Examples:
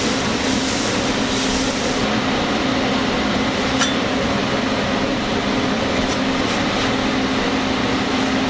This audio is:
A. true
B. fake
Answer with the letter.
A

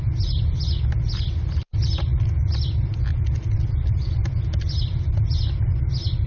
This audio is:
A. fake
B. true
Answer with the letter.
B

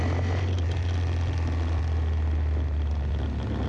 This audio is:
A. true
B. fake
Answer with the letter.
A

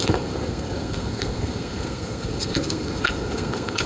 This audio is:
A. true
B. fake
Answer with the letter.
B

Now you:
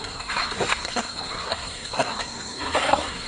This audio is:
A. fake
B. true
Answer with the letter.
A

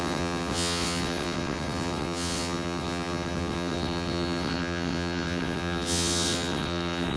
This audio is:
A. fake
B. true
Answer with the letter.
A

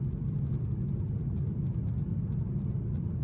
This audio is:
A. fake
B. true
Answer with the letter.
B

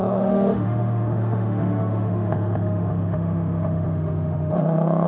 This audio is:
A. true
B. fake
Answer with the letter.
B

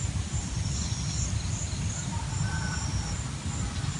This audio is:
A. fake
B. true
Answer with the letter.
A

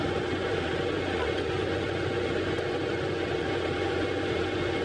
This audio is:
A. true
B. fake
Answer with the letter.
B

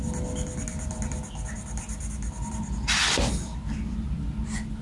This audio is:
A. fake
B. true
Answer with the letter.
B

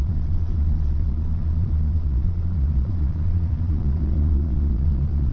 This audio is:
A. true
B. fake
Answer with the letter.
B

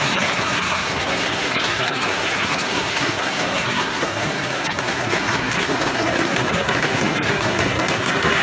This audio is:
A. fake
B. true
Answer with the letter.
A